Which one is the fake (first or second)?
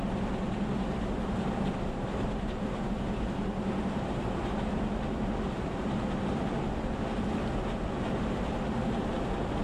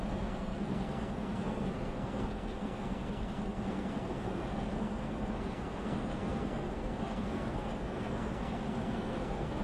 second